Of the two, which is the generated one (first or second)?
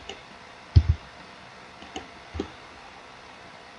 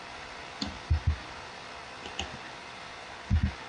first